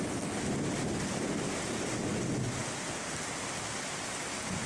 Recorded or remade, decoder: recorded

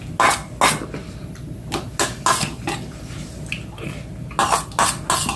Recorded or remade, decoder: recorded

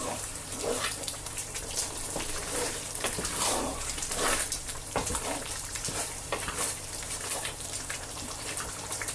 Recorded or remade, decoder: remade, vocoder, BigVGAN v2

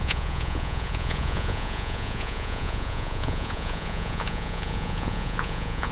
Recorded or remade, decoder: remade, vocoder, Vocos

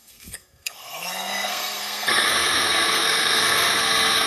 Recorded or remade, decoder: remade, codec, SNAC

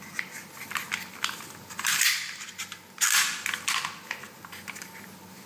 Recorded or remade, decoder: recorded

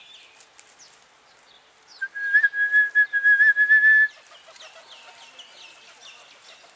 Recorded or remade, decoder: recorded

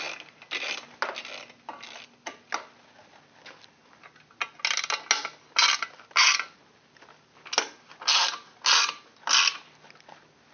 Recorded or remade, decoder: recorded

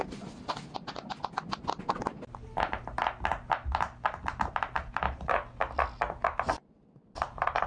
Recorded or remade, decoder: recorded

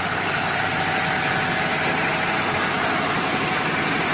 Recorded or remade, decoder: recorded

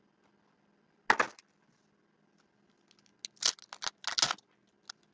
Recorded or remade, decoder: recorded